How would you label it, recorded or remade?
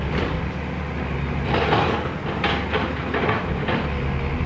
recorded